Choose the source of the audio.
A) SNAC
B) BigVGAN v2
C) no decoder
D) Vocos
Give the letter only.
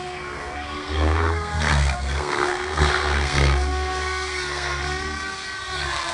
A